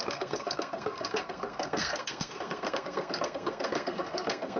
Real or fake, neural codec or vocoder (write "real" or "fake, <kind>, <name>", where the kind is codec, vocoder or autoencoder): fake, codec, SNAC